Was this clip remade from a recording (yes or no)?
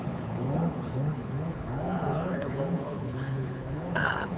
yes